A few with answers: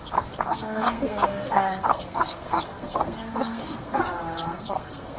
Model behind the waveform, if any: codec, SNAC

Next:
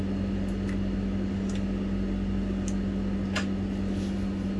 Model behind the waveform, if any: none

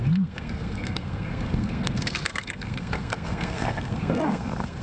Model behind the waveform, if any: codec, SNAC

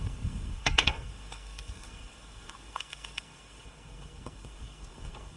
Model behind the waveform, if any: codec, SNAC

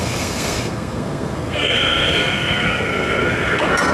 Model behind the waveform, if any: codec, SNAC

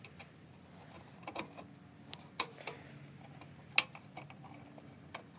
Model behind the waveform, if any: none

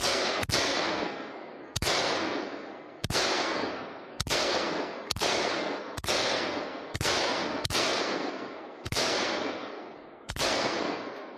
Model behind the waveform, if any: codec, SNAC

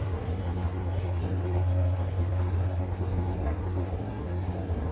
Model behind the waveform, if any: codec, SNAC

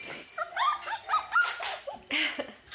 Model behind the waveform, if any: none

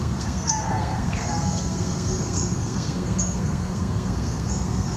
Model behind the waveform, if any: codec, SNAC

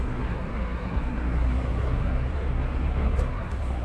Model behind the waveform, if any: codec, SNAC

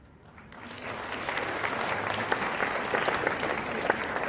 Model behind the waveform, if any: none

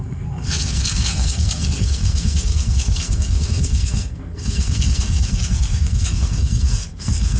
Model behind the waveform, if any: codec, SNAC